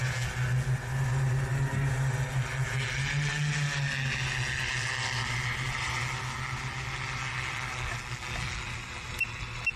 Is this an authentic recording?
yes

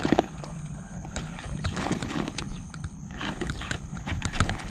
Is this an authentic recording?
no